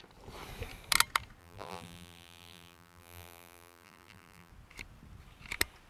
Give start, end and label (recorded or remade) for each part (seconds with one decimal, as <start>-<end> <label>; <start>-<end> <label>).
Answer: 0.0-1.4 recorded; 1.4-4.5 remade; 4.5-5.9 recorded